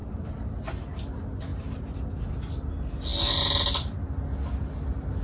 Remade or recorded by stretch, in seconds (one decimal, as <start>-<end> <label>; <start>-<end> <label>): 0.0-5.2 recorded